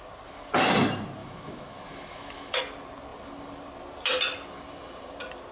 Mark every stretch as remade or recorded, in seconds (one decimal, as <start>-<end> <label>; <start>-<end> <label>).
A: 0.0-1.2 recorded; 1.2-2.6 remade; 2.6-5.5 recorded